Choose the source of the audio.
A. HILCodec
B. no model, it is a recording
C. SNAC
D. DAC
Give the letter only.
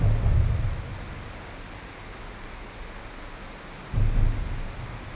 B